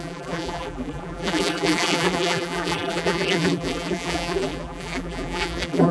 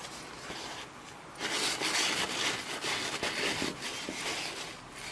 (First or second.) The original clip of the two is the second